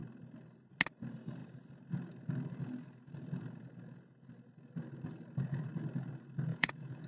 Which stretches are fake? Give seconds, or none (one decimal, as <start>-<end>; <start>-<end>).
6.5-7.1